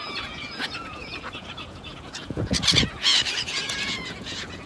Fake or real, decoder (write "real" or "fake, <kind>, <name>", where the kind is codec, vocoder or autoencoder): fake, vocoder, Vocos